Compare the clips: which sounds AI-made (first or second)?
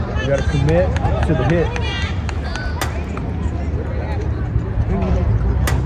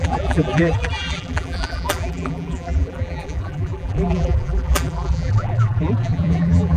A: second